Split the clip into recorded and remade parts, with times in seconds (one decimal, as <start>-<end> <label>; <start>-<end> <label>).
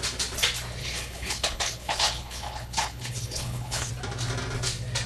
0.0-0.8 recorded; 0.8-3.9 remade; 3.9-5.1 recorded